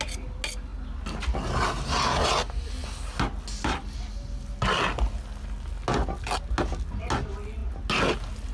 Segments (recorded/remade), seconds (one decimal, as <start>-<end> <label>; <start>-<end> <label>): 0.0-8.5 recorded